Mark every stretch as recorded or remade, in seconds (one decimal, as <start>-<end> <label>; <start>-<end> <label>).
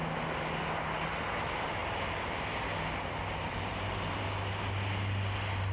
0.0-5.7 recorded